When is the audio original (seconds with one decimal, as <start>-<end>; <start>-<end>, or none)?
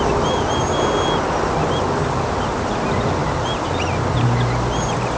0.0-5.2